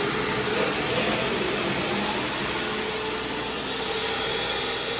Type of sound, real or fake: real